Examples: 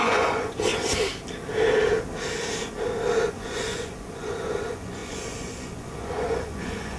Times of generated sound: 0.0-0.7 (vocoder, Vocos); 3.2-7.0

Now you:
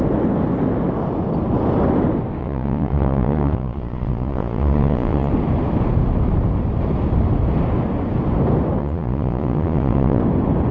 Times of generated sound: 2.4-5.3 (vocoder, Vocos); 8.8-10.2

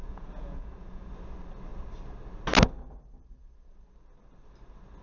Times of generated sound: 0.0-1.1 (vocoder, Vocos)

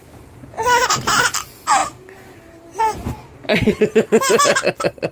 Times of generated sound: none

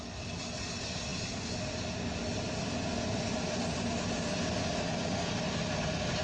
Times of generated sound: none